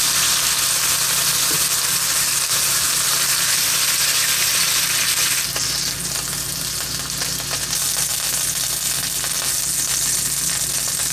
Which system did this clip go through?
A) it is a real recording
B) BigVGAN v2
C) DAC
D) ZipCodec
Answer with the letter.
A